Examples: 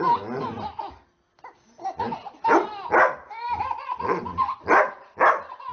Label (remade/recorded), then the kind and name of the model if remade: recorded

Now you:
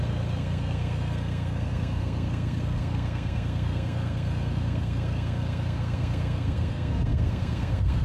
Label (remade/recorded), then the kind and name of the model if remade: remade, codec, SNAC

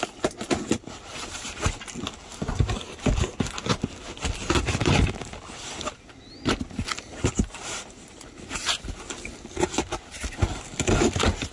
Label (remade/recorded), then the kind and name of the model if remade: recorded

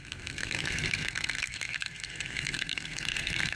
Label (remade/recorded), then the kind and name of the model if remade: remade, codec, SNAC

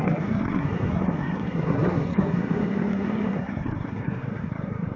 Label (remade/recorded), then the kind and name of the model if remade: remade, codec, SNAC